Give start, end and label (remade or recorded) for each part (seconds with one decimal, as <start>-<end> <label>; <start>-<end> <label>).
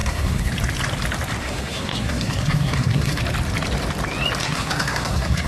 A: 0.0-0.5 remade; 0.5-1.4 recorded; 1.4-3.2 remade; 3.2-4.4 recorded; 4.4-5.5 remade